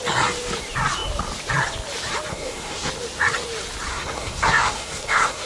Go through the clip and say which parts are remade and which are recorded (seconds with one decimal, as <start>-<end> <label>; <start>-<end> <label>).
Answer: 0.0-2.3 recorded; 2.3-2.9 remade; 2.9-3.9 recorded; 3.9-5.5 remade